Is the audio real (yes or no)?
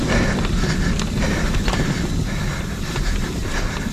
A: yes